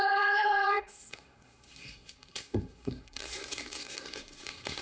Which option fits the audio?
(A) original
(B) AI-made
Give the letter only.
B